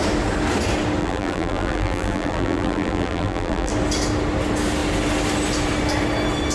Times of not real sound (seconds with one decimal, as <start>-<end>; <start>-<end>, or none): 1.0-3.7